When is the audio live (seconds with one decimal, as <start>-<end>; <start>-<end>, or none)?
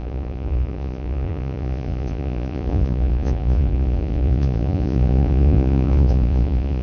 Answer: none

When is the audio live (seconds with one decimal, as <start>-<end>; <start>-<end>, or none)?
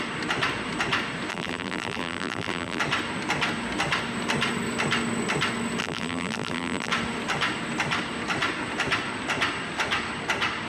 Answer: 0.0-1.3; 2.8-5.8; 6.9-10.7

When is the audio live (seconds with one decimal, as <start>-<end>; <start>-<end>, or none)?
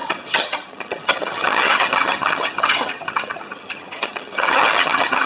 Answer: none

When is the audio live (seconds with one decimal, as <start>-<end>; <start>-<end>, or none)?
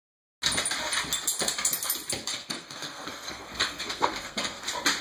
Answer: 0.0-2.3; 4.6-5.0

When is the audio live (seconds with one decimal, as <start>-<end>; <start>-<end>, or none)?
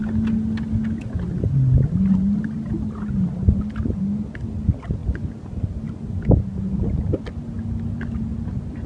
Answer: 0.0-8.9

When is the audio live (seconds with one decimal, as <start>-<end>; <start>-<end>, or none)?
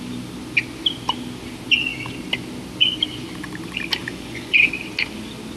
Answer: 0.0-4.0; 4.7-5.6